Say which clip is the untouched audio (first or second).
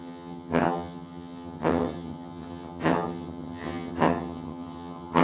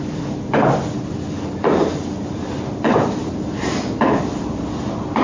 second